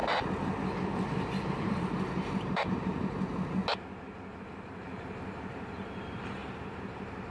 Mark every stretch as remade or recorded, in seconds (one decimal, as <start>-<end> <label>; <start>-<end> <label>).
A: 0.0-1.5 recorded; 1.5-3.6 remade; 3.6-4.4 recorded; 4.4-7.3 remade